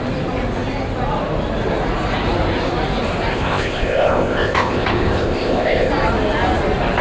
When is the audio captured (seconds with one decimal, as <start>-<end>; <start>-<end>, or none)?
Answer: 0.0-3.3; 5.9-7.0

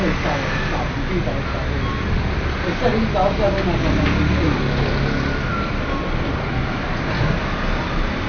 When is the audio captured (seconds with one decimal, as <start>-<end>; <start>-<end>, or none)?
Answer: 0.0-8.3

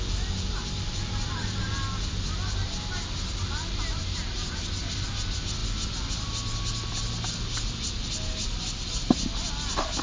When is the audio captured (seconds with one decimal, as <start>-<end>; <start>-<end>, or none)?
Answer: 0.0-10.0

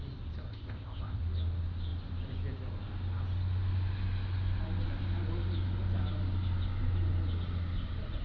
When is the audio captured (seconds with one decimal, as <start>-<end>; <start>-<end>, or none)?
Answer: 0.0-0.5; 1.2-8.2

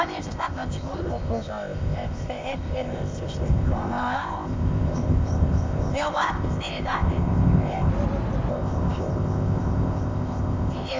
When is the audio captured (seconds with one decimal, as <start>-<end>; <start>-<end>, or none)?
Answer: 7.9-8.5

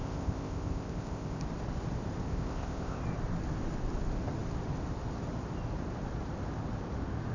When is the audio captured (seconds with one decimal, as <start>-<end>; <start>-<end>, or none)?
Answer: 1.4-2.3; 3.0-7.3